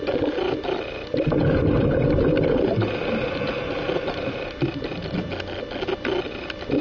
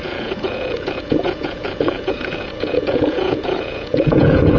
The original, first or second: first